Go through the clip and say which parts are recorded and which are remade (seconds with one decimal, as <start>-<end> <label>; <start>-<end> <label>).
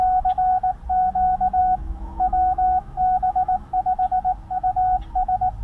0.0-1.6 recorded; 1.6-3.7 remade; 3.7-5.6 recorded